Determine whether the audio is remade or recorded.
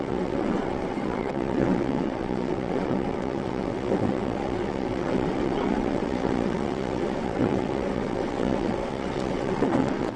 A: remade